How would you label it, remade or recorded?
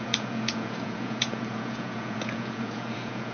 remade